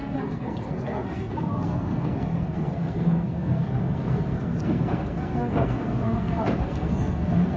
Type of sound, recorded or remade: remade